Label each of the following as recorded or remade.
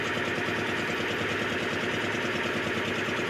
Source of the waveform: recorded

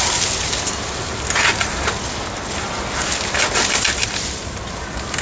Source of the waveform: recorded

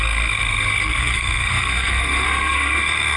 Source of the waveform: remade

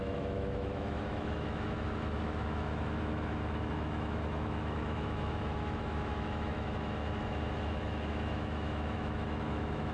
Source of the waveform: remade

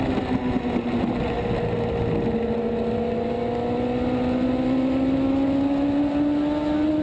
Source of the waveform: recorded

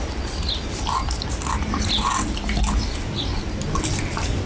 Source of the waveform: recorded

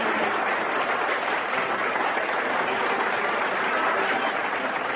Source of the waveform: recorded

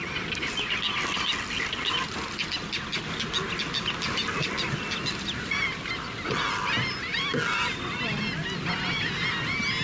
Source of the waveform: recorded